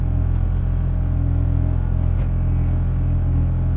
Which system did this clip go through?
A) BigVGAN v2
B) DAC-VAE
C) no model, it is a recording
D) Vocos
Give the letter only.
C